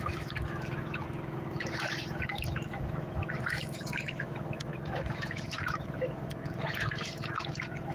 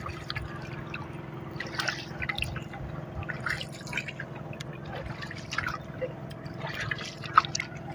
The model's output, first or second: first